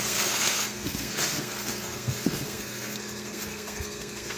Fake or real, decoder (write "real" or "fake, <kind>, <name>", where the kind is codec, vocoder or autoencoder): fake, codec, SNAC